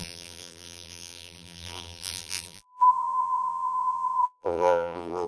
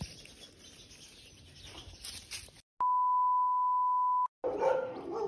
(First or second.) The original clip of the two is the second